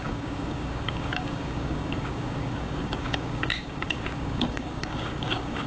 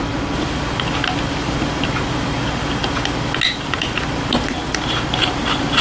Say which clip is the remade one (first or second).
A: first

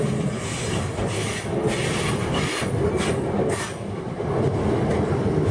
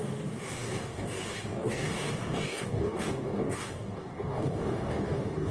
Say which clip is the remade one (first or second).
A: second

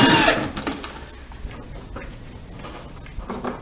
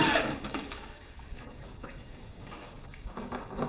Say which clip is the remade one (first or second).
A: second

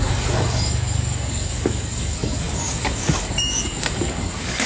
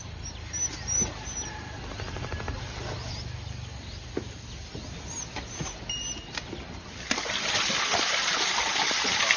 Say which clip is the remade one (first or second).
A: first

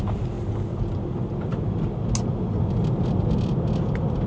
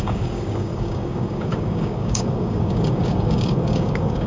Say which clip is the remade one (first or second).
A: second